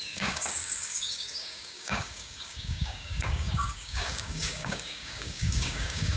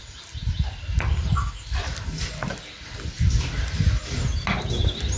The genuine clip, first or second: second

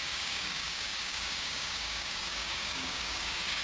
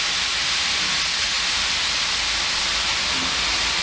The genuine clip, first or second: second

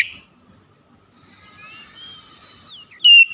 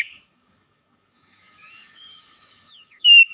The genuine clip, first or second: first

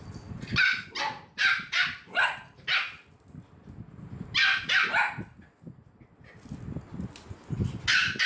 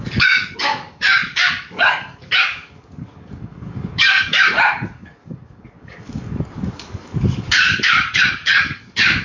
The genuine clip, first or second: first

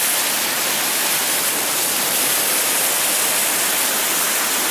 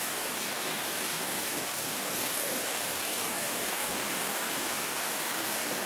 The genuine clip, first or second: first